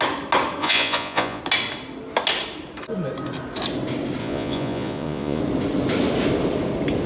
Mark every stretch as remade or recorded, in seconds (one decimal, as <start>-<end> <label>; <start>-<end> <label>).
0.0-0.6 recorded; 0.6-1.4 remade; 1.4-4.2 recorded; 4.2-5.4 remade; 5.4-7.1 recorded